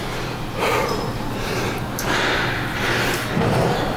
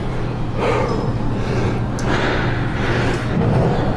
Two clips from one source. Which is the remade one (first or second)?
first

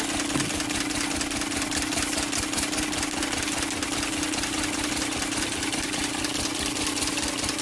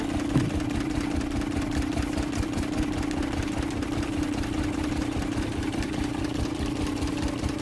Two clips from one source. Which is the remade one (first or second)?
second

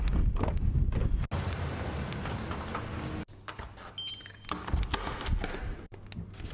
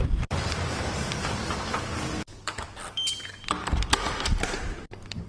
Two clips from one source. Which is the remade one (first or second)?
second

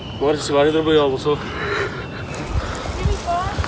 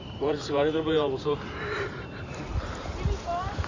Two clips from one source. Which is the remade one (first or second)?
second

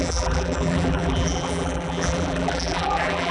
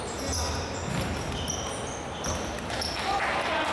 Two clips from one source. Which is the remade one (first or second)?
first